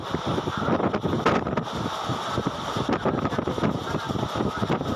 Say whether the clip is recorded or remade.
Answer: recorded